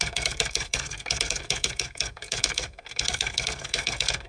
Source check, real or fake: fake